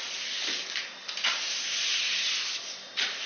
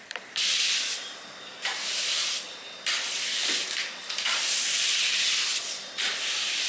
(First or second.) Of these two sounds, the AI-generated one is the second